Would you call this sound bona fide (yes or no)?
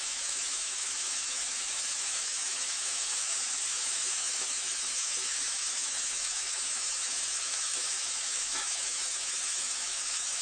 no